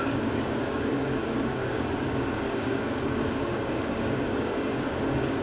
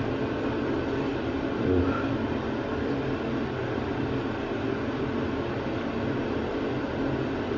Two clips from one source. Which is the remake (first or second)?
first